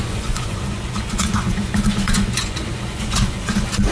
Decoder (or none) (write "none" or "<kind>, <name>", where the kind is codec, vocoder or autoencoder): vocoder, Vocos